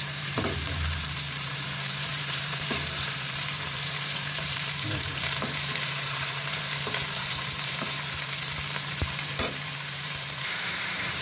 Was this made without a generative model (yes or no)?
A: no